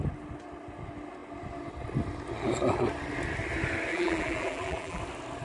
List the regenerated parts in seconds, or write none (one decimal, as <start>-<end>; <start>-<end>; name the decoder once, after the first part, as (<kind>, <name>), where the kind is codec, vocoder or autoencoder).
3.9-5.0 (vocoder, BigVGAN v2)